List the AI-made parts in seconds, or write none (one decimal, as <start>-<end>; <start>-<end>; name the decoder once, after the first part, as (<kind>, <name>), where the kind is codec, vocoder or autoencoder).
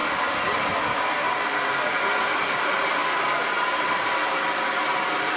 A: none